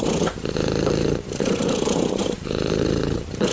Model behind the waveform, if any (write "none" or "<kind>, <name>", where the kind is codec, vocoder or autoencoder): vocoder, BigVGAN v2